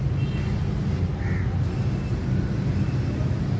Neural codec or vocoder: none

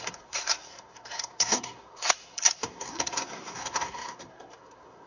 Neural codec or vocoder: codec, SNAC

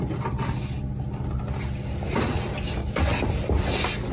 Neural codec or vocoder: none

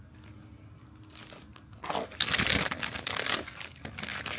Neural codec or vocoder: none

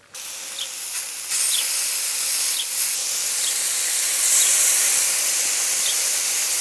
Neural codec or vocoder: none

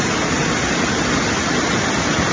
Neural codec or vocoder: none